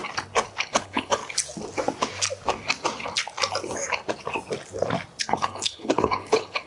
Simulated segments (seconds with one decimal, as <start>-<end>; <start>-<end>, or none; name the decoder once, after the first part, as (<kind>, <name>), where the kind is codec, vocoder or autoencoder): 0.6-1.2 (codec, HILCodec); 5.2-6.7